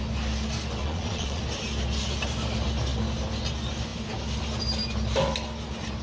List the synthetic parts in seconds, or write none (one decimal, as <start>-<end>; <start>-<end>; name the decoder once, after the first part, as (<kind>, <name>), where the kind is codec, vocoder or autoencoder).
0.8-1.4 (vocoder, Vocos)